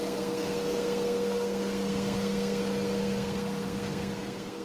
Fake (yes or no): yes